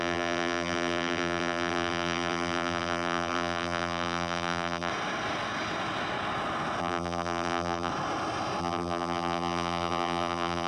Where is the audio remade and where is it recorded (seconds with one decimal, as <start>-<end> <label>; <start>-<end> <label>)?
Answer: 0.0-4.9 remade; 4.9-6.8 recorded; 6.8-7.9 remade; 7.9-8.6 recorded; 8.6-10.7 remade